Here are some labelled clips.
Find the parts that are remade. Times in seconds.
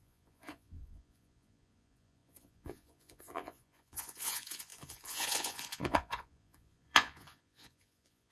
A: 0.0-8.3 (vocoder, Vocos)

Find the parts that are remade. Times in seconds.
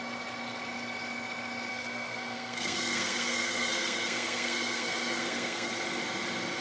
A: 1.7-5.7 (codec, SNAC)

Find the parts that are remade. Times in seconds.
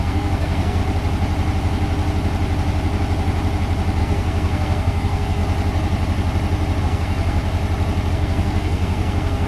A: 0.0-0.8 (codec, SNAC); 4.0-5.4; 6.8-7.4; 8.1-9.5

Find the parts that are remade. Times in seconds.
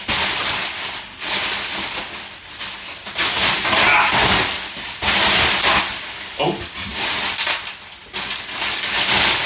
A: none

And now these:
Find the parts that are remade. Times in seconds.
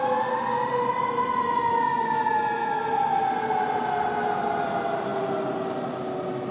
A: none